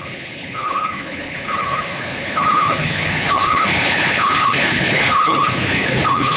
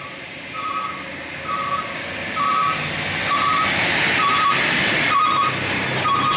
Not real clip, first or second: first